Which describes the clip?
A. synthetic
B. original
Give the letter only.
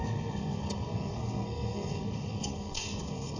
A